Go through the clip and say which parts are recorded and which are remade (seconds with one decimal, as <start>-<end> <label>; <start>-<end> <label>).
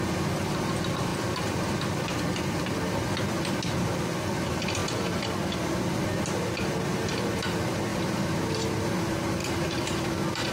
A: 0.0-1.1 recorded; 1.1-3.5 remade; 3.5-4.8 recorded; 4.8-5.3 remade; 5.3-7.9 recorded; 7.9-8.9 remade; 8.9-9.4 recorded; 9.4-10.5 remade